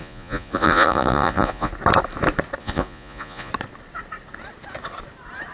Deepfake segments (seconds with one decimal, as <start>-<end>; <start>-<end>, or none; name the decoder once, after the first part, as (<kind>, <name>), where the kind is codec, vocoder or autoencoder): 0.0-1.7 (vocoder, Vocos); 2.6-3.5

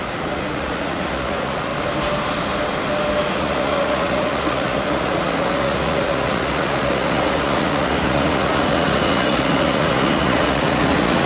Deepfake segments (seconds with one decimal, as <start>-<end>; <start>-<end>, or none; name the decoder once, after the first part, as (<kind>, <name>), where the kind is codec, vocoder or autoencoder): 0.0-1.7 (vocoder, Vocos); 3.3-11.3

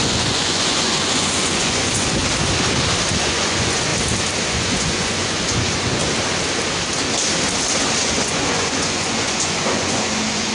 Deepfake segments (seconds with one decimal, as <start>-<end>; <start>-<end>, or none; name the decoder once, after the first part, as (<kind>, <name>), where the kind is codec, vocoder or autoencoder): 0.0-2.2 (vocoder, Vocos); 3.2-3.9; 4.5-6.0; 8.0-10.5

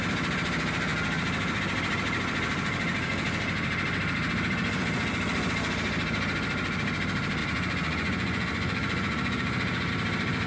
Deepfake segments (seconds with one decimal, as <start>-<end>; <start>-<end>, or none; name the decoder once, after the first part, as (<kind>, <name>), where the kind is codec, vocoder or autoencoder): 7.4-9.9 (vocoder, Vocos)

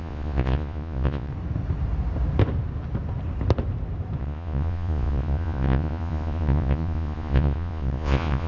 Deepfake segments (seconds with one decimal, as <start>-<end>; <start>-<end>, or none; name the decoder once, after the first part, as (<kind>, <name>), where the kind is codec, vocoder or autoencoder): 0.0-1.3 (vocoder, Vocos); 4.2-8.5

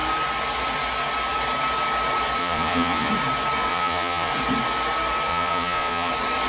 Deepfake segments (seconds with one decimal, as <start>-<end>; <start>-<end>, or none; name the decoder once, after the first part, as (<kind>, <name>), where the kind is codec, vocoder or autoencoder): 2.4-3.1 (vocoder, Vocos); 3.7-4.3; 5.3-6.1

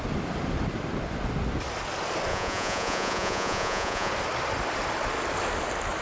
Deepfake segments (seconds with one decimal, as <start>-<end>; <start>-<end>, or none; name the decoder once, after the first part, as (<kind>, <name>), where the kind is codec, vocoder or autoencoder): 2.3-4.1 (vocoder, Vocos)

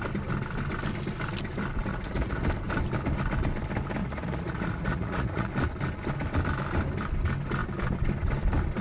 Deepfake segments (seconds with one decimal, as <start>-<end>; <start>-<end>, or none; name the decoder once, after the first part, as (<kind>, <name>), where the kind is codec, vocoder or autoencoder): 1.9-2.4 (vocoder, Vocos); 4.0-5.5